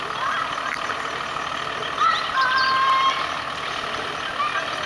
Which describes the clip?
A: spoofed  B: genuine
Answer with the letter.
B